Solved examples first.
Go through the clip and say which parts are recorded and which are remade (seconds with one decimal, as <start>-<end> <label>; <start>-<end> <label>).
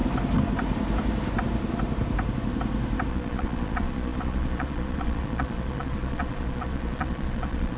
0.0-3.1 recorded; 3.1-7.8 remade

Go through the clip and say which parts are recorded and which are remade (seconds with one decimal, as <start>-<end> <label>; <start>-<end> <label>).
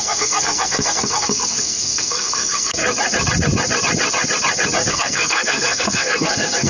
0.0-2.8 remade; 2.8-4.9 recorded; 4.9-6.7 remade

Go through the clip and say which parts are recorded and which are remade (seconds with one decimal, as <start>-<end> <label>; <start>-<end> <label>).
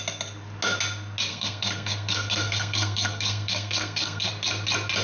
0.0-1.3 recorded; 1.3-4.3 remade; 4.3-5.0 recorded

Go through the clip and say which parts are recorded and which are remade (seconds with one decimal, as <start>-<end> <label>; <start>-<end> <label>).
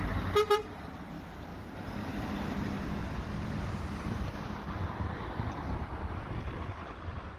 0.0-7.4 recorded